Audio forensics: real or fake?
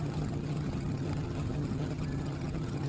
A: fake